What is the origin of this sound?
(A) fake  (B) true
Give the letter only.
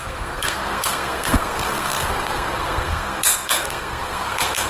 A